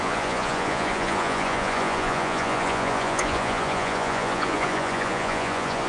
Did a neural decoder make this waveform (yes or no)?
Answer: yes